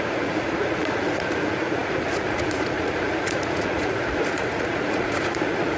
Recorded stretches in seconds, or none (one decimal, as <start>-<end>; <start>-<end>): none